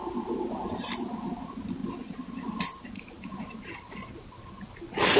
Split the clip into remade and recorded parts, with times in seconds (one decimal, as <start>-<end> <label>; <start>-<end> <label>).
0.0-5.2 recorded